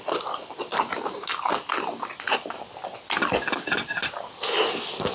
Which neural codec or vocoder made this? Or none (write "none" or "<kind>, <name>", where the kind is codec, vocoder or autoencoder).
none